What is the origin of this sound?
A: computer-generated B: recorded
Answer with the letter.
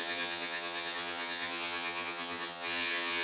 A